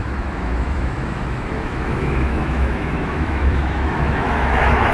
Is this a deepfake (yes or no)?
yes